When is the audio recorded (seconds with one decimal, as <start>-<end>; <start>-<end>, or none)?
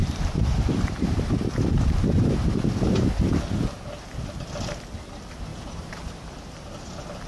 3.9-5.5